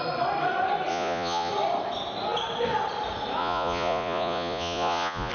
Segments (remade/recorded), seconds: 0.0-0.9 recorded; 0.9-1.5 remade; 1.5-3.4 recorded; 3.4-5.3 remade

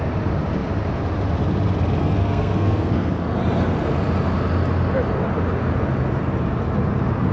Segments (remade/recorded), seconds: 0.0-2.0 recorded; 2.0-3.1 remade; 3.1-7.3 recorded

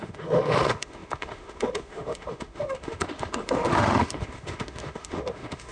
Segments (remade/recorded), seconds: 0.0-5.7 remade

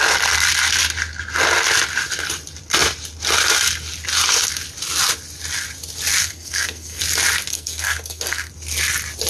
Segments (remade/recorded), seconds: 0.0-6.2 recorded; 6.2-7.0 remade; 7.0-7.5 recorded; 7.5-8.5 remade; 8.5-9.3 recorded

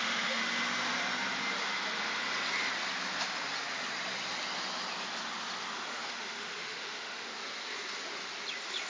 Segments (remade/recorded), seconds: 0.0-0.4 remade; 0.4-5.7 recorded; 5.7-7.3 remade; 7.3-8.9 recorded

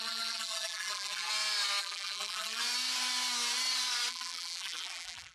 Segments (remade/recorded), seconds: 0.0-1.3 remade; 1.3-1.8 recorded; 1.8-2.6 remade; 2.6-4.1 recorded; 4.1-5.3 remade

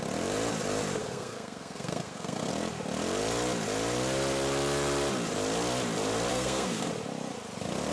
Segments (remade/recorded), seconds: 0.0-1.0 recorded; 1.0-2.5 remade; 2.5-6.3 recorded; 6.3-6.9 remade; 6.9-7.9 recorded

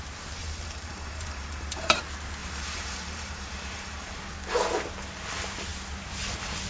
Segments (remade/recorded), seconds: 0.0-0.4 recorded; 0.4-2.0 remade; 2.0-2.4 recorded; 2.4-4.2 remade; 4.2-6.7 recorded